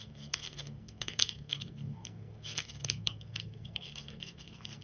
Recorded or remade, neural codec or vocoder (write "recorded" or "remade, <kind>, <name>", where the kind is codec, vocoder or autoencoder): remade, codec, SNAC